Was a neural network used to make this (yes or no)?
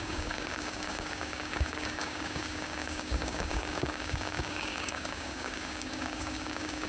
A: yes